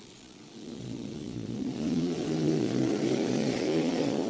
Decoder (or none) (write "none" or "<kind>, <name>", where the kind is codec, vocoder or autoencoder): vocoder, Vocos